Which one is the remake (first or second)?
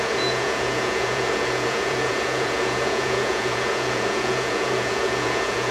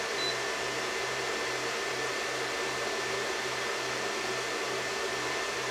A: first